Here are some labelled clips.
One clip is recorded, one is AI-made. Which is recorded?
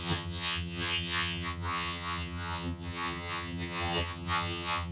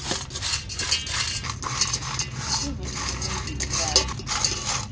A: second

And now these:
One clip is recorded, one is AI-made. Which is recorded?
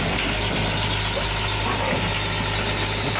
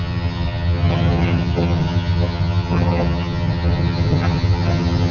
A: first